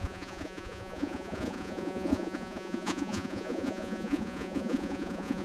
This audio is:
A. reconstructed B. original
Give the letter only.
A